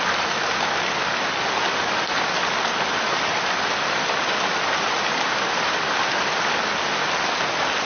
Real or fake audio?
real